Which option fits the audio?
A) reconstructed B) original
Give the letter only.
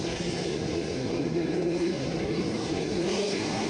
A